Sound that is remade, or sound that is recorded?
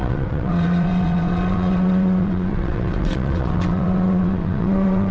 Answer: remade